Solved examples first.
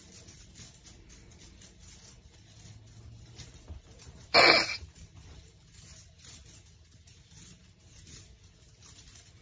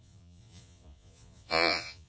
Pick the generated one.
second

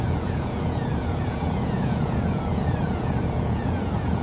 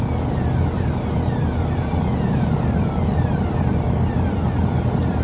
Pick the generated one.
first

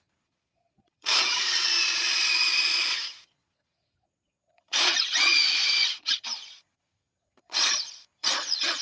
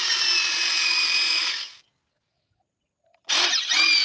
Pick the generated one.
first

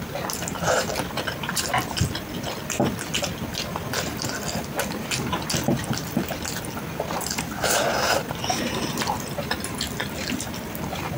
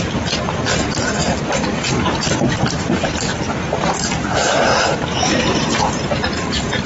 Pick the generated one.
second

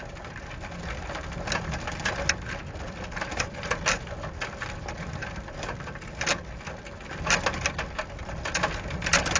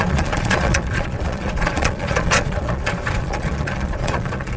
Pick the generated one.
second